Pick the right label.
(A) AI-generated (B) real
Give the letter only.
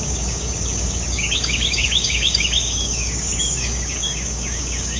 A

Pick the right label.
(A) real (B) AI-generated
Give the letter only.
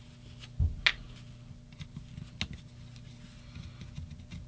A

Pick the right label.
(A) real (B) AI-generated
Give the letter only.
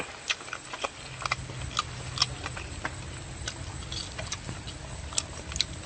A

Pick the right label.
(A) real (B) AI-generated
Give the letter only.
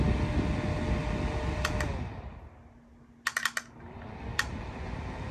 A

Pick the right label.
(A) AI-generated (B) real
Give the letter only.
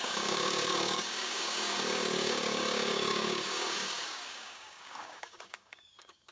A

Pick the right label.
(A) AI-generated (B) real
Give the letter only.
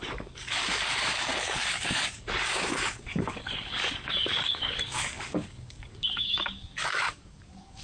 A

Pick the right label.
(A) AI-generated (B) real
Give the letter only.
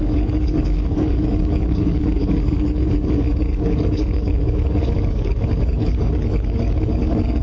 A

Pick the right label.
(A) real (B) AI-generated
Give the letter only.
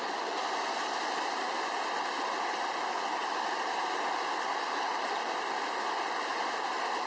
A